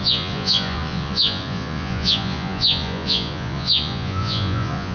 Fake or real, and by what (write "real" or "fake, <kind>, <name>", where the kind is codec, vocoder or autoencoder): fake, vocoder, Vocos